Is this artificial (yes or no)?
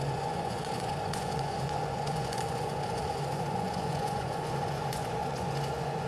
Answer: yes